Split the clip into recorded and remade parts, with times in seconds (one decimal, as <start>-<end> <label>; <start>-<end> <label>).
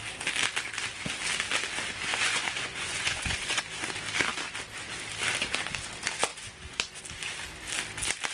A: 0.0-2.1 recorded; 2.1-3.6 remade; 3.6-6.3 recorded; 6.3-7.0 remade; 7.0-8.3 recorded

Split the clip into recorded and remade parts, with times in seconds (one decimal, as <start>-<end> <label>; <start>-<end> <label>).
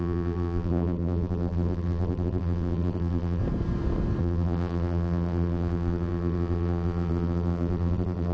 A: 0.0-3.4 remade; 3.4-4.2 recorded; 4.2-8.3 remade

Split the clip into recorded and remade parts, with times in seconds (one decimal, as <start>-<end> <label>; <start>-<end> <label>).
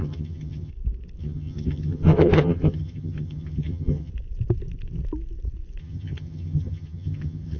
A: 0.0-0.7 remade; 0.7-1.2 recorded; 1.2-4.1 remade; 4.1-5.8 recorded; 5.8-7.6 remade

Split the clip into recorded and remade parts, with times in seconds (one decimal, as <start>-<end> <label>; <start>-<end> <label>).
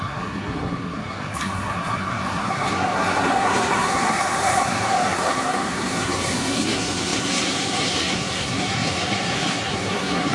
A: 0.0-10.3 remade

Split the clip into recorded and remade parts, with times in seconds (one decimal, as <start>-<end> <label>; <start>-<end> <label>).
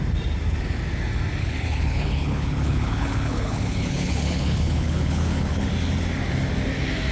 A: 0.0-1.4 recorded; 1.4-5.7 remade; 5.7-7.1 recorded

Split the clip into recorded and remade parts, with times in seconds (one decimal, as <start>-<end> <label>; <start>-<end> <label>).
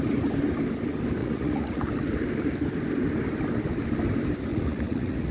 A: 0.0-1.2 recorded; 1.2-1.8 remade; 1.8-4.5 recorded; 4.5-5.3 remade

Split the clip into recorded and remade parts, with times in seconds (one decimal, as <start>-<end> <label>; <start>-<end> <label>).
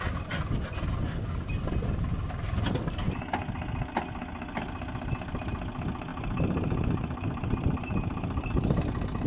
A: 0.0-6.1 recorded; 6.1-8.8 remade; 8.8-9.3 recorded